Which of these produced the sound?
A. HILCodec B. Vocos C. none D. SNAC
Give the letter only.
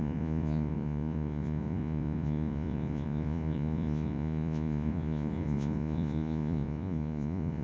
B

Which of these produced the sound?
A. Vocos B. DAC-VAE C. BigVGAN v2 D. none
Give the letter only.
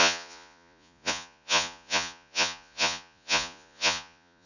A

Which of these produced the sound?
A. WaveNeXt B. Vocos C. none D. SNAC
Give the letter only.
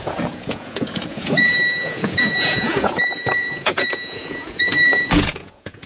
B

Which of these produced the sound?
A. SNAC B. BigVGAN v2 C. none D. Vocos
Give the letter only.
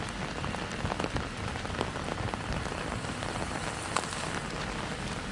C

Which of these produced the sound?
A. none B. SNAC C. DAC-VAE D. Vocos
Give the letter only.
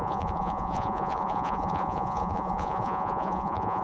D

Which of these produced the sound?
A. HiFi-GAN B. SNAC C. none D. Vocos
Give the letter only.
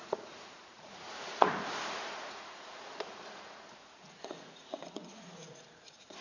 D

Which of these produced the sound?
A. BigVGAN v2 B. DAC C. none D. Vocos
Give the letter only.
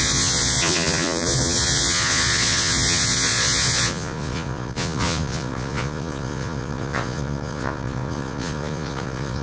D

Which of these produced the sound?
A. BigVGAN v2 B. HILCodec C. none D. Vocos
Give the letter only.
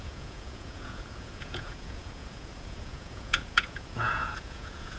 D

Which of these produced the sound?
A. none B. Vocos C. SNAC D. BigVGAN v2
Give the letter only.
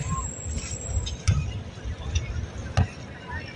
A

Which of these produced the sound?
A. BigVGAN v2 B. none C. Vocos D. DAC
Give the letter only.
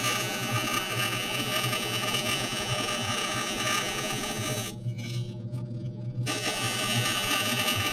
C